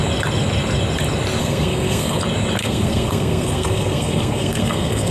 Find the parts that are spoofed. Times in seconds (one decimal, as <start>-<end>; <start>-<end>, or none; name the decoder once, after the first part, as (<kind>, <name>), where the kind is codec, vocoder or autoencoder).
1.4-2.2 (codec, SNAC); 2.6-5.1